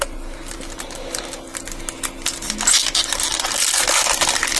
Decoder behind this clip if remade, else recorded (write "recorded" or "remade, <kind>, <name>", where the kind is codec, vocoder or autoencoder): recorded